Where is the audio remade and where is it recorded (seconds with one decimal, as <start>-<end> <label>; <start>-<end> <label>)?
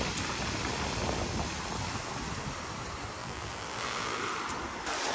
0.0-3.2 recorded; 3.2-4.2 remade; 4.2-5.1 recorded